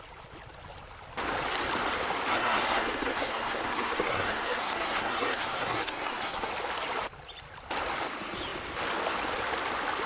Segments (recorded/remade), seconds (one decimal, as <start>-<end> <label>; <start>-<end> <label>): 0.0-2.3 recorded; 2.3-6.5 remade; 6.5-10.1 recorded